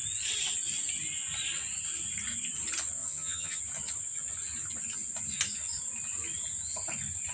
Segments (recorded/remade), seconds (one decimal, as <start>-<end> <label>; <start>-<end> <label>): 0.0-3.0 recorded; 3.0-3.6 remade; 3.6-7.3 recorded